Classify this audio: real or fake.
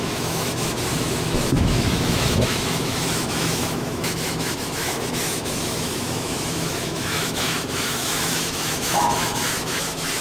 fake